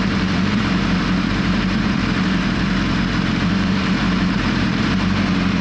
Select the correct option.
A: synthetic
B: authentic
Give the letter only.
A